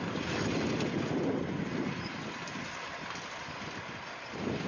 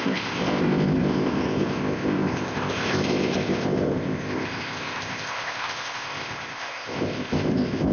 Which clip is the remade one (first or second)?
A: second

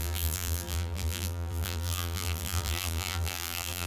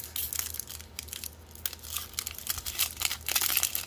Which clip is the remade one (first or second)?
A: first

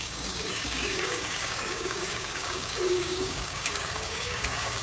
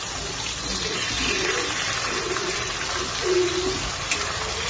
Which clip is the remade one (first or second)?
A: first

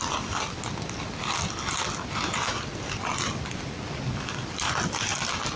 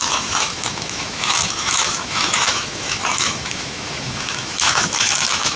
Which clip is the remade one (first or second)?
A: second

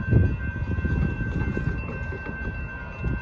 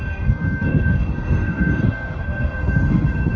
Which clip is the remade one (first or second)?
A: second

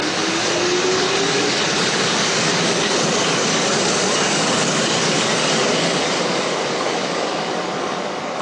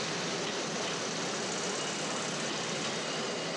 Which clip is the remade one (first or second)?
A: first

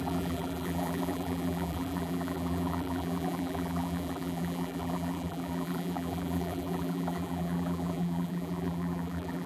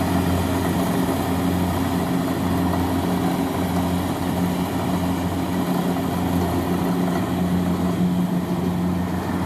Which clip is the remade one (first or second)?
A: first